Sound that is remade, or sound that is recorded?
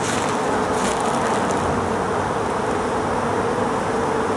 recorded